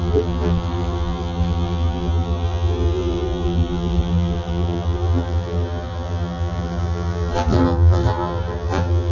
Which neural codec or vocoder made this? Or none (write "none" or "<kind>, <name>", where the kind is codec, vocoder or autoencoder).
vocoder, BigVGAN v2